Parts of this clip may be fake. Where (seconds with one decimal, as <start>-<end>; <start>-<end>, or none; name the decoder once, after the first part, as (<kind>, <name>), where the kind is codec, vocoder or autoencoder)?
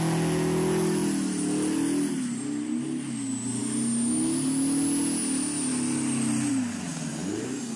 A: none